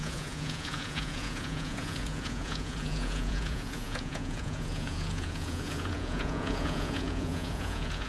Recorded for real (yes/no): no